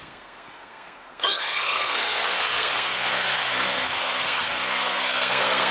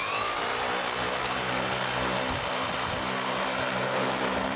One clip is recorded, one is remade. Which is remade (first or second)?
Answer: first